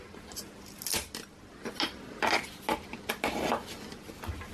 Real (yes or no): yes